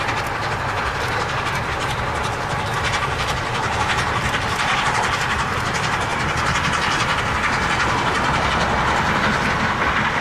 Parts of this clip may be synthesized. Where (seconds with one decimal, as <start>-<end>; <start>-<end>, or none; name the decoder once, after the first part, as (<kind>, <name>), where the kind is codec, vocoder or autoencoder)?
none